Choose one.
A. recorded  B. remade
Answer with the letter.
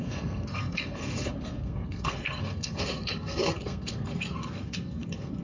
B